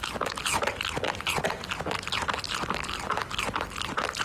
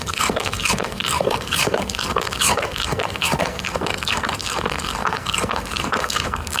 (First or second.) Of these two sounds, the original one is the first